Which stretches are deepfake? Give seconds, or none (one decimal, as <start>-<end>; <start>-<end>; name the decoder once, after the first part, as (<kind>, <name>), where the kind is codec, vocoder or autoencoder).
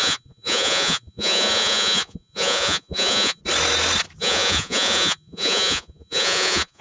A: 0.0-3.4 (vocoder, Vocos); 4.2-6.8